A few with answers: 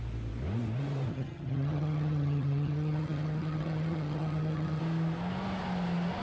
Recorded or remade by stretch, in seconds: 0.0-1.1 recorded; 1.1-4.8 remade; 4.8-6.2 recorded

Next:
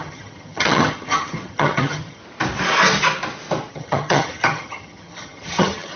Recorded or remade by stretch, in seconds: 0.0-2.2 remade; 2.2-3.7 recorded; 3.7-6.0 remade